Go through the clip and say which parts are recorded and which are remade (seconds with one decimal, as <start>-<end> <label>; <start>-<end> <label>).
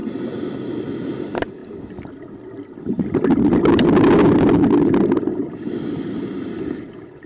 0.0-7.3 recorded